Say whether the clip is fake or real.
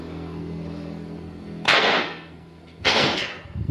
fake